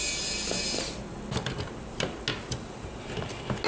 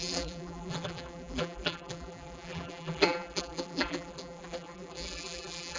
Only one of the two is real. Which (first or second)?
first